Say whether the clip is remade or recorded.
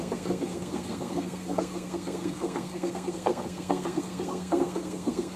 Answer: remade